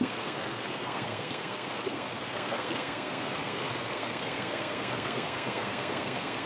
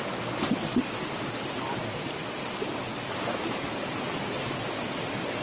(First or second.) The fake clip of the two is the first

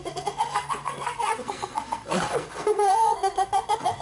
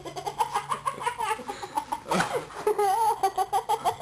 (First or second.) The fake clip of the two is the first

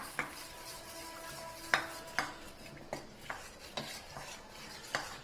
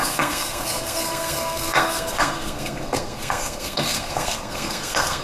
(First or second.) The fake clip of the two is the second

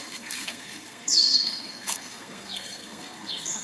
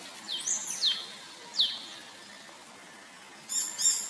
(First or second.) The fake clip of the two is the first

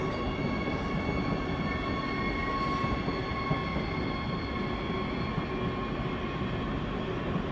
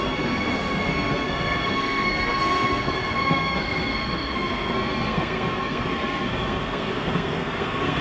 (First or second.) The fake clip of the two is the second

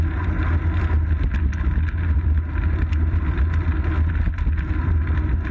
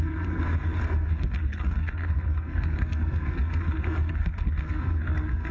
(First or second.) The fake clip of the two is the second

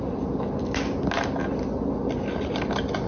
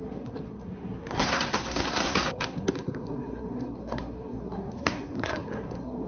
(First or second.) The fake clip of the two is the second